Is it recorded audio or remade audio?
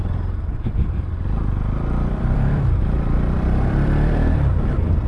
remade